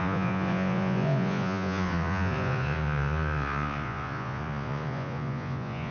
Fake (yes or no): yes